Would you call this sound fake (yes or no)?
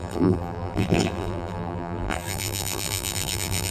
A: yes